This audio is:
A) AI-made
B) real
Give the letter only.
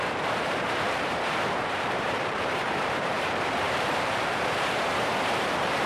A